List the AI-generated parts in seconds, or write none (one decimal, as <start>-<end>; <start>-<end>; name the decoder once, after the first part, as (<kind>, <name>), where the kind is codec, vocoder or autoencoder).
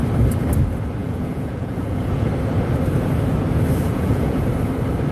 1.0-2.3 (vocoder, Vocos); 3.9-4.4